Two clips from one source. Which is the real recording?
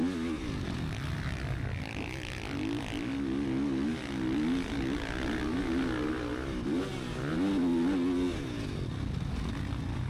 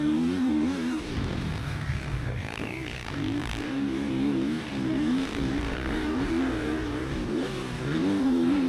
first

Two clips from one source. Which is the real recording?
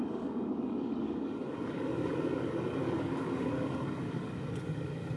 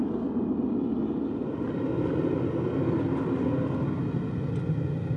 second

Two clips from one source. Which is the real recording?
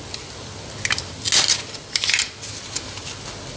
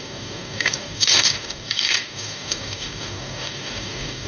first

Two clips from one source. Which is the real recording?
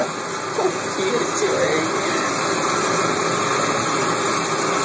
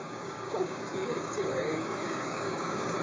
first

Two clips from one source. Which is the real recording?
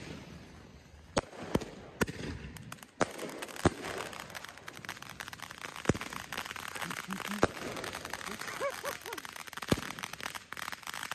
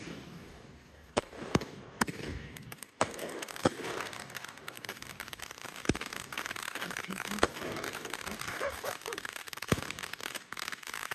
first